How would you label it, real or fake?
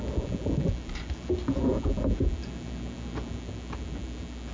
real